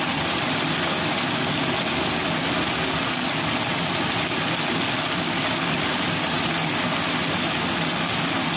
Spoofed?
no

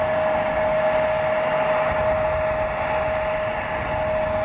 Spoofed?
no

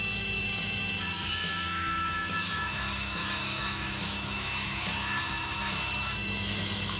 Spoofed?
yes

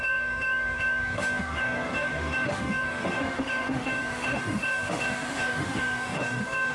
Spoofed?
yes